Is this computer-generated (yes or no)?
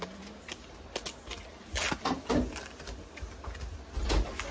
no